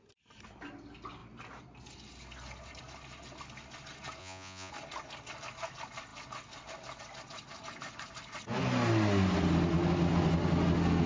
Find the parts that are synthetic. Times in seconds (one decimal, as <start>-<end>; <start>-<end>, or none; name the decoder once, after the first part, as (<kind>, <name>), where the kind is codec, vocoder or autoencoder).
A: 4.2-4.7 (vocoder, Vocos)